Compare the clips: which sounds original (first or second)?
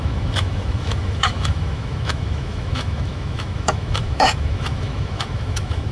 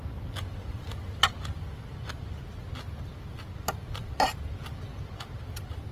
second